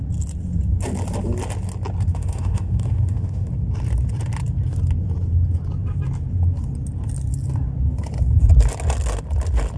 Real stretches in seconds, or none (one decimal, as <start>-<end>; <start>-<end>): 0.0-2.1; 3.5-9.8